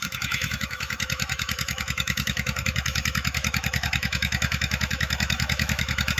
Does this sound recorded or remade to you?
remade